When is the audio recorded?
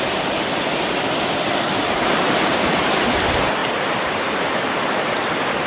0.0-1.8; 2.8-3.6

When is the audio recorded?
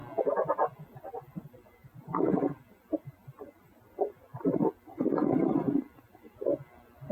0.0-1.8; 2.6-4.3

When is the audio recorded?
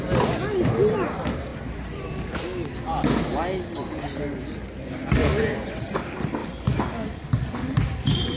0.0-5.2; 5.8-8.4